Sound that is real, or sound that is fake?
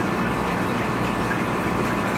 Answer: fake